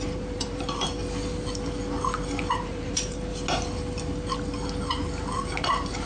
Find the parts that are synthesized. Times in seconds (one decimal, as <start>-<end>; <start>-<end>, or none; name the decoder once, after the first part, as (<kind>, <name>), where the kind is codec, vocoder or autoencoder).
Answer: 0.0-1.0 (vocoder, BigVGAN v2); 2.5-3.3